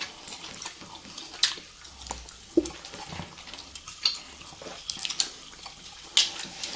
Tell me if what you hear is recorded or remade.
recorded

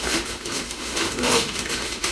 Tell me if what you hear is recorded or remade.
remade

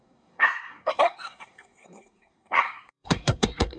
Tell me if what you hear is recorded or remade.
remade